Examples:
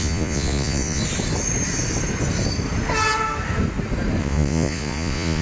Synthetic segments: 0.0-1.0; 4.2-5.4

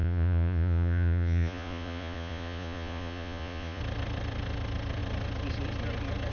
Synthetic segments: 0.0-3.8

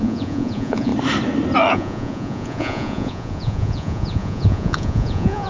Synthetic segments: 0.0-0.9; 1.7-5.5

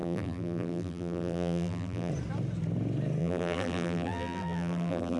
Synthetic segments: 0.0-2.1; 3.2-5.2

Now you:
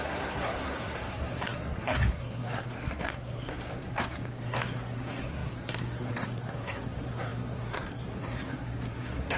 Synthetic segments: 0.0-9.4

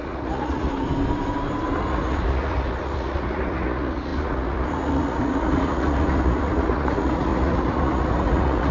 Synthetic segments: 0.0-0.7; 1.8-8.7